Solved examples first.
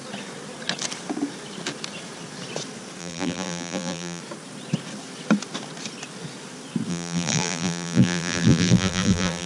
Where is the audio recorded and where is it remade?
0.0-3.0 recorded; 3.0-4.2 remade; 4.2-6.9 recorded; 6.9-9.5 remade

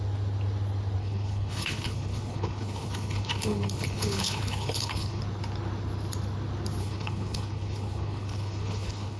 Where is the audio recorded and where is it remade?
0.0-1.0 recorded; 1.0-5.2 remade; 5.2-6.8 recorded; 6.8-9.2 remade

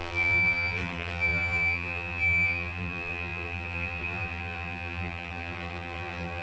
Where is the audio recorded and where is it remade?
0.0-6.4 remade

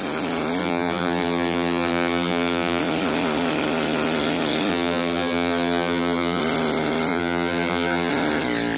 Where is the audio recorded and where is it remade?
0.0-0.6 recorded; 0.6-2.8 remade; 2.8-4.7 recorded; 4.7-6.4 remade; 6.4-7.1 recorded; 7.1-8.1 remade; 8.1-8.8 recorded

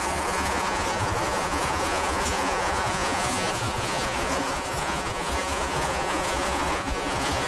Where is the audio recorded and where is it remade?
0.0-7.5 remade